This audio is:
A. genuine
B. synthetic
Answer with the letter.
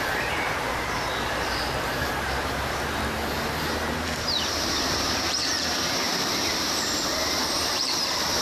B